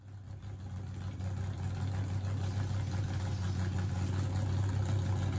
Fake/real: real